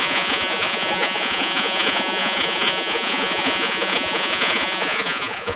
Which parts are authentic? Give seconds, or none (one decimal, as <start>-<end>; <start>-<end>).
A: none